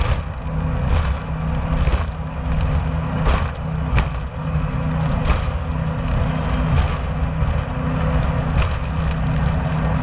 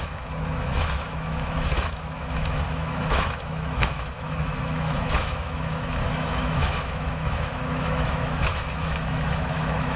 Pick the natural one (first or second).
first